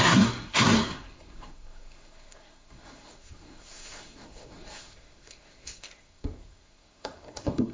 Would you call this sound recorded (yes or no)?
no